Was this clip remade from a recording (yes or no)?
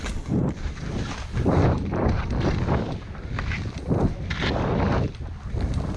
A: no